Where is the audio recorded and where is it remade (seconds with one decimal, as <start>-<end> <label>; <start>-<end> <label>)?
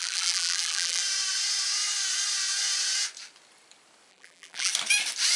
0.0-1.0 remade; 1.0-4.1 recorded; 4.1-4.7 remade; 4.7-5.4 recorded